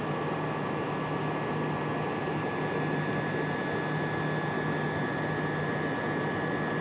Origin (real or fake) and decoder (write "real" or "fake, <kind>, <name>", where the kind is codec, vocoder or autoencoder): real